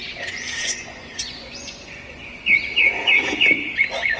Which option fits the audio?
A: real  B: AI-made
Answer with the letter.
B